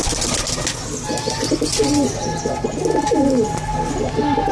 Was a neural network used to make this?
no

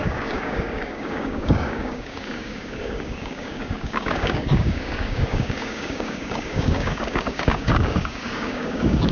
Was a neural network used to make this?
yes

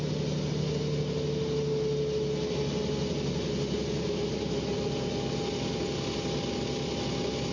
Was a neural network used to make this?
no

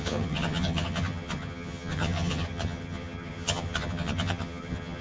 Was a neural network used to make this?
yes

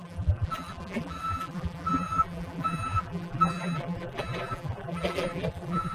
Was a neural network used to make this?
yes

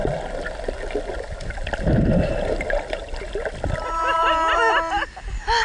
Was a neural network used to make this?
no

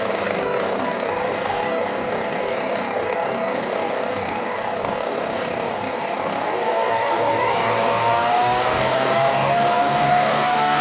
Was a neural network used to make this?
yes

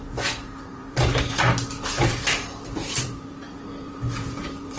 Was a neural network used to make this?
yes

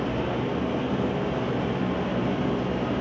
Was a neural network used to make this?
no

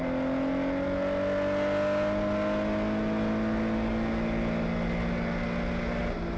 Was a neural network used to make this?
no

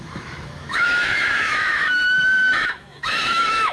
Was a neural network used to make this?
yes